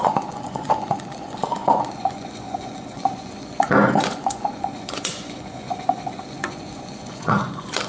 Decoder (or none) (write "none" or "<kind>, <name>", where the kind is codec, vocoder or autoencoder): vocoder, Vocos